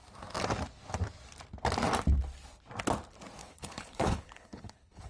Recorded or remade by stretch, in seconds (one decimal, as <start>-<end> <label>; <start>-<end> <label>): 0.0-3.4 recorded; 3.4-5.1 remade